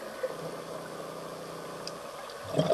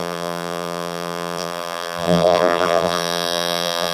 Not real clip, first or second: second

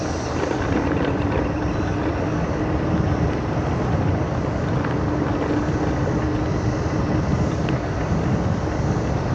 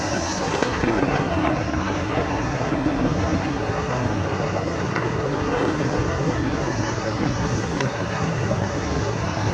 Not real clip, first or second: second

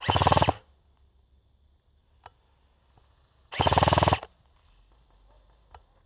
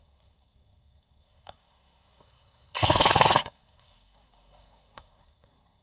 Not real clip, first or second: second